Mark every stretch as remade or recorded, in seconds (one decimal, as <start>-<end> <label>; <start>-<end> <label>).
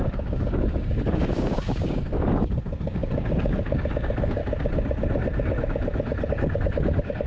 0.0-4.4 remade; 4.4-6.3 recorded; 6.3-7.3 remade